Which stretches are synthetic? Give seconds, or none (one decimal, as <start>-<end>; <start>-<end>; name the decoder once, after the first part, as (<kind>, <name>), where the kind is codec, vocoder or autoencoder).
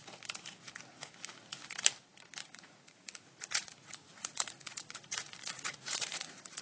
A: 2.4-6.6 (vocoder, Vocos)